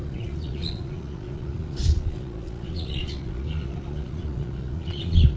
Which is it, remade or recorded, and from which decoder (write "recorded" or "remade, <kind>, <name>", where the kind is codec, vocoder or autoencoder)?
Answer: remade, vocoder, Vocos